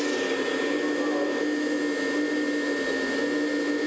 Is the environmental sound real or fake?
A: real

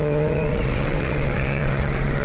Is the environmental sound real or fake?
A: fake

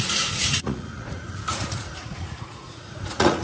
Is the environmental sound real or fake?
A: fake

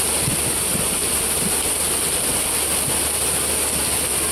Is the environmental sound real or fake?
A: real